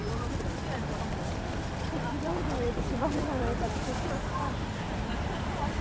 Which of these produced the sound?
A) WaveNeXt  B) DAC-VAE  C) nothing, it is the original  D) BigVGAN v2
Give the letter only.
D